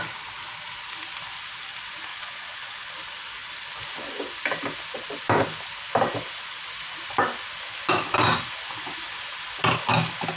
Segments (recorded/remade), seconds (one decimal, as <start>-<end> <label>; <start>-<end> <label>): 0.0-2.1 recorded; 2.1-2.9 remade; 2.9-10.4 recorded